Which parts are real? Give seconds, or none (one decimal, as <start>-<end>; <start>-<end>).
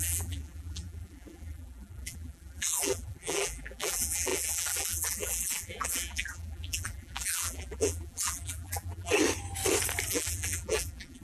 9.2-10.1